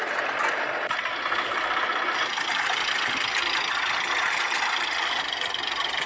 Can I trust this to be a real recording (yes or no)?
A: yes